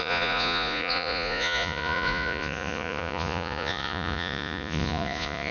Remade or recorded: remade